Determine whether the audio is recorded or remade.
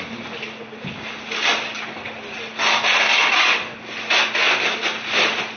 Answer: recorded